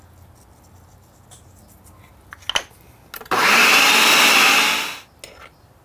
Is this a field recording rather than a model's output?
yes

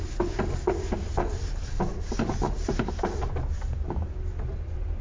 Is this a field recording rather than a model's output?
yes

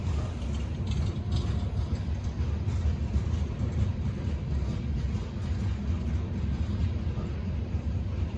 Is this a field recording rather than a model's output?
yes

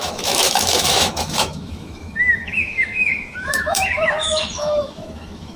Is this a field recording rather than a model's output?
no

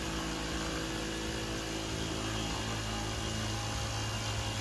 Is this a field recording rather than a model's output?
yes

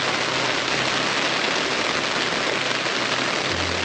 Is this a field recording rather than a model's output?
yes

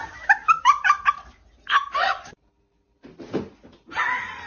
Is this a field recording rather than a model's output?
yes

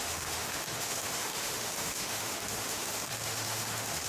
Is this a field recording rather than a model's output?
no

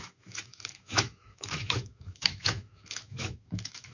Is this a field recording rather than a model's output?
no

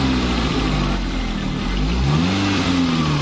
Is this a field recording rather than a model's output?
yes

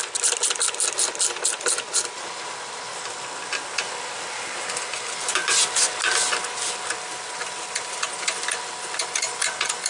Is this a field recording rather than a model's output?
yes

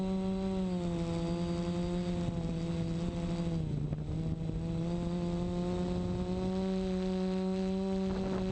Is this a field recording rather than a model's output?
yes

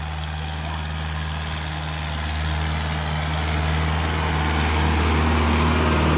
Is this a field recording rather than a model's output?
yes